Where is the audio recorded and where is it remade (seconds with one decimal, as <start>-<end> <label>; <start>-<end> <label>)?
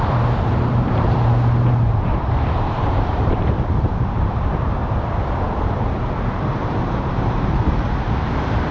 0.0-8.7 remade